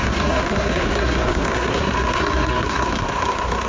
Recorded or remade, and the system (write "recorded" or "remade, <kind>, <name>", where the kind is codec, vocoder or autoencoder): remade, codec, SNAC